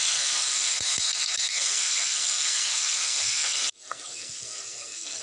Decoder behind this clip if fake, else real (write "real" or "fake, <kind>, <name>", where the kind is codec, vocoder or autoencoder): fake, codec, SNAC